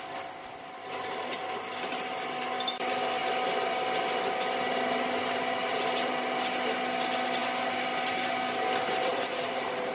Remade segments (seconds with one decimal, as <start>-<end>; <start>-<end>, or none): none